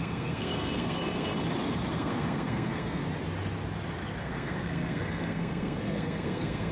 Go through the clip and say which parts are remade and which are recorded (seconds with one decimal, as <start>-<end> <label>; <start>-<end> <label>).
0.0-1.3 remade; 1.3-1.9 recorded; 1.9-3.0 remade; 3.0-4.2 recorded; 4.2-6.7 remade